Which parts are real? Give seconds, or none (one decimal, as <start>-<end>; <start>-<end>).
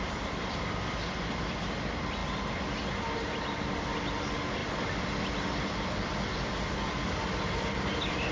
0.0-8.3